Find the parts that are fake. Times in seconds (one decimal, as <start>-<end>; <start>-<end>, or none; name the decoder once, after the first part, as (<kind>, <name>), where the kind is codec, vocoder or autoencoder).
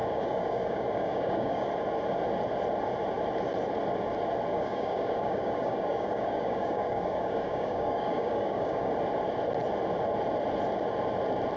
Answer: 0.0-1.7 (codec, DAC); 4.5-8.9